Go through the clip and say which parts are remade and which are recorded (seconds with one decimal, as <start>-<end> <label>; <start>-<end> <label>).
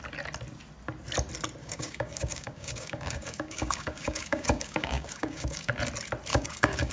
0.0-1.6 recorded; 1.6-5.7 remade; 5.7-6.3 recorded; 6.3-6.9 remade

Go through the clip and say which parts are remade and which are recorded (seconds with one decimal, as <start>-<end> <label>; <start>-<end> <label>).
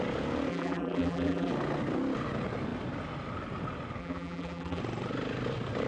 0.0-0.5 recorded; 0.5-1.5 remade; 1.5-4.0 recorded; 4.0-4.8 remade; 4.8-5.9 recorded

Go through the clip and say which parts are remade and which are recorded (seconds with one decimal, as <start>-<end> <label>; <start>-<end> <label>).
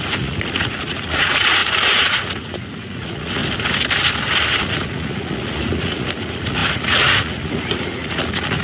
0.0-3.4 remade; 3.4-4.6 recorded; 4.6-8.6 remade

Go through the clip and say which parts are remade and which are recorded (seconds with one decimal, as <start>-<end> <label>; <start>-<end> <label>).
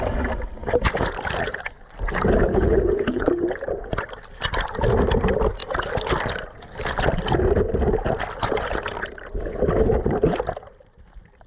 0.0-2.5 recorded; 2.5-3.3 remade; 3.3-11.5 recorded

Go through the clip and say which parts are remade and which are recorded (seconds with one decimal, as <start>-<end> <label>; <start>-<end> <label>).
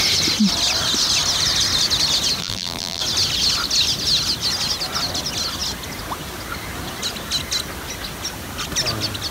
0.0-2.4 recorded; 2.4-3.0 remade; 3.0-9.3 recorded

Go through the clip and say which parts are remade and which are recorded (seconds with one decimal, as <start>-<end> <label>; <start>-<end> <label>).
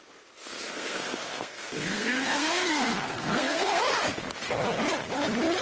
0.0-0.4 recorded; 0.4-3.8 remade; 3.8-5.6 recorded